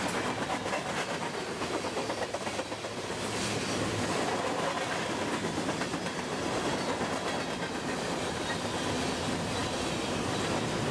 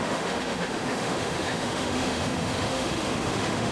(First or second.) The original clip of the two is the first